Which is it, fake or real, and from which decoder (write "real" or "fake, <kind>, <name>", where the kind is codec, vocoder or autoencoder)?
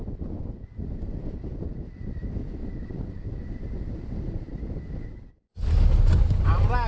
real